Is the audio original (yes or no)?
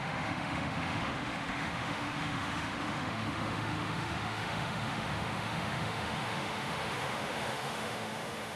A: no